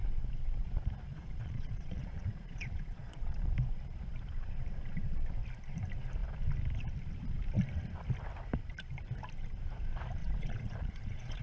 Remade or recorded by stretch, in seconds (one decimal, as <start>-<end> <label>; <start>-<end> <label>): 0.0-1.1 recorded; 1.1-3.5 remade; 3.5-10.2 recorded; 10.2-11.4 remade